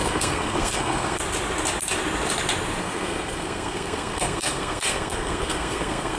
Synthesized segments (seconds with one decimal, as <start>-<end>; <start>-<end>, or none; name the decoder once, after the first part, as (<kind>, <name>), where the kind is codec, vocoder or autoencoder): 0.0-1.2 (codec, SNAC); 2.8-6.2